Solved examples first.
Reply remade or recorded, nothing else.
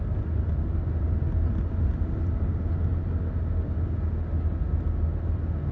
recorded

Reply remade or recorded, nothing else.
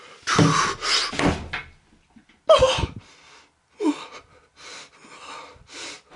recorded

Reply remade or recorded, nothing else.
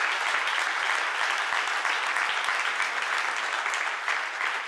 recorded